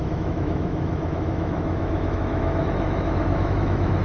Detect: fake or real fake